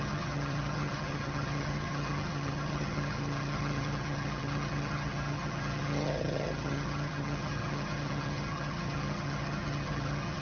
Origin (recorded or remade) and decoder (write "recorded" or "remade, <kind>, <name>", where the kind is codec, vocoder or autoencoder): remade, vocoder, HiFi-GAN